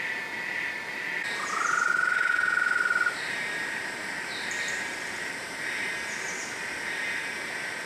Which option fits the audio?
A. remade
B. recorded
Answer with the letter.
A